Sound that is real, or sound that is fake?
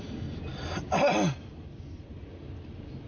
real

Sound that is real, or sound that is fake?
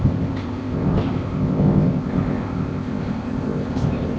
fake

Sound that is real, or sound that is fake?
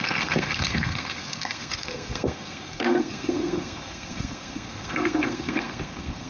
fake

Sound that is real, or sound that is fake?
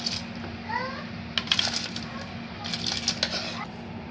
real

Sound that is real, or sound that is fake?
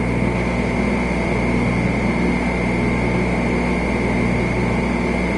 real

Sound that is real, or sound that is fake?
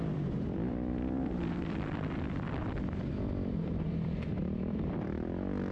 fake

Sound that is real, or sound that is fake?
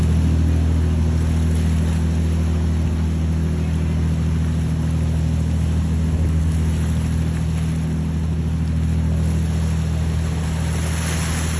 real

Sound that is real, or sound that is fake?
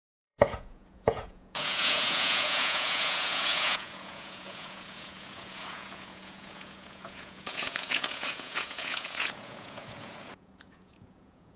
fake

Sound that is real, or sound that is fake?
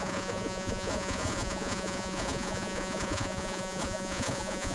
fake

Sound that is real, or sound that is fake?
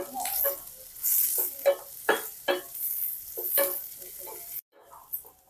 real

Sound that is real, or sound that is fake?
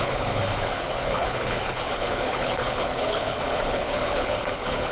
fake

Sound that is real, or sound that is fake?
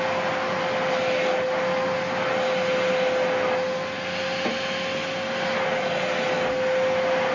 real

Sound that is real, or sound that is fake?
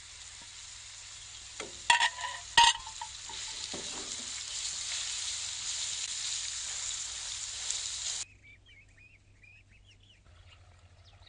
real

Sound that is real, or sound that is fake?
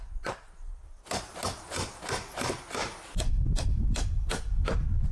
real